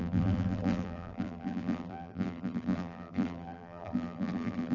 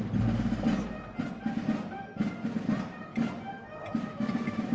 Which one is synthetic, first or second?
first